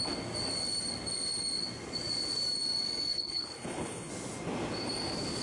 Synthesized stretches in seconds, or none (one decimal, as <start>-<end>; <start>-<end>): 3.1-4.1